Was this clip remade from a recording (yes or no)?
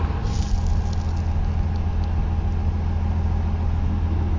no